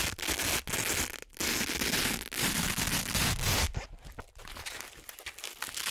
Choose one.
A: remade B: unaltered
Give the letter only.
B